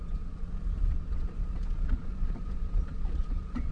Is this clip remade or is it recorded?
remade